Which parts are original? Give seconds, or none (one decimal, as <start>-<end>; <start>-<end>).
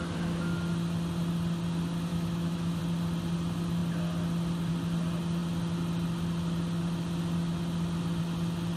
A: 0.0-2.1; 2.8-8.8